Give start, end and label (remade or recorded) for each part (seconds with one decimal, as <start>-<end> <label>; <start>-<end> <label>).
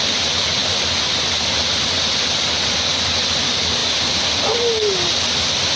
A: 0.0-5.8 recorded